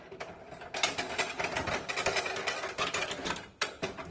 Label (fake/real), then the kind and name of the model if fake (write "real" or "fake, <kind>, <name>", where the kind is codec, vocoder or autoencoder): real